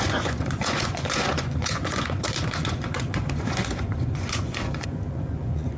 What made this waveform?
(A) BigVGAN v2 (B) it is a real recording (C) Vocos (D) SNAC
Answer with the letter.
C